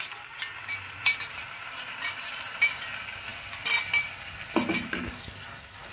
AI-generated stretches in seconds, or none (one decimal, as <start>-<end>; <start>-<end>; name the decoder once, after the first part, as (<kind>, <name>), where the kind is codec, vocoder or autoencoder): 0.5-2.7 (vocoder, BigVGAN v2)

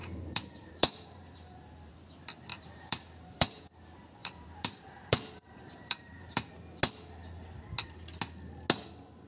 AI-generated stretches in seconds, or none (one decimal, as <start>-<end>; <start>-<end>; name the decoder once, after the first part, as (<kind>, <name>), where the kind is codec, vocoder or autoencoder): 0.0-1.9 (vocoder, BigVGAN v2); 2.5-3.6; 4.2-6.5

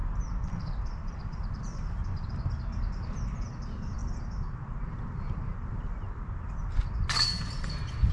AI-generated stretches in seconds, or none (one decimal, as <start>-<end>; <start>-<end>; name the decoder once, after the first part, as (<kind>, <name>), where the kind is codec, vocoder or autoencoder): 0.0-2.3 (vocoder, BigVGAN v2)

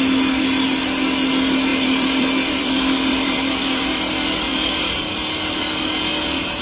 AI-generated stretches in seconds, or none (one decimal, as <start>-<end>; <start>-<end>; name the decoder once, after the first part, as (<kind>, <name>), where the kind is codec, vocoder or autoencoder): 1.7-4.0 (vocoder, BigVGAN v2); 4.5-5.0

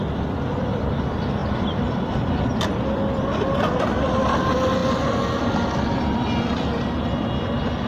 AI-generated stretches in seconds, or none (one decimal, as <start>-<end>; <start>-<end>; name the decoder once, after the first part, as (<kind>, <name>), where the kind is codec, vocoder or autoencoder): 1.4-2.5 (vocoder, BigVGAN v2)

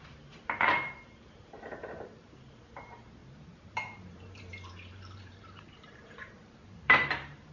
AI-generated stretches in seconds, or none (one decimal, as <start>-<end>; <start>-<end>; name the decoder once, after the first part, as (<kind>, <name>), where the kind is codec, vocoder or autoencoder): 0.0-7.5 (vocoder, BigVGAN v2)